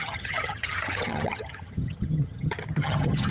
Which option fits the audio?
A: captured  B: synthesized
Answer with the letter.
B